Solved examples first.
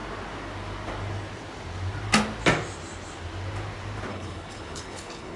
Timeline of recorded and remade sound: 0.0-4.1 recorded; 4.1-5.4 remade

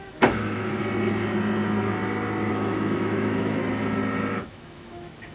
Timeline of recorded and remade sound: 0.0-0.8 remade; 0.8-2.5 recorded; 2.5-3.6 remade; 3.6-4.3 recorded; 4.3-5.3 remade

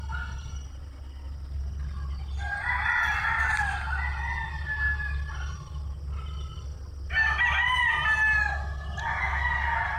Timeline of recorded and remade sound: 0.0-10.0 recorded